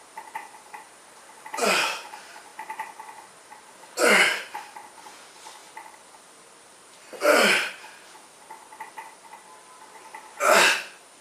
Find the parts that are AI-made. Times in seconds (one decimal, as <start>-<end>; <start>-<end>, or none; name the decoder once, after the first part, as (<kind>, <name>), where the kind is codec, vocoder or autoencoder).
0.0-11.2 (vocoder, BigVGAN v2)